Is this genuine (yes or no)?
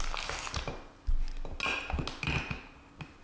yes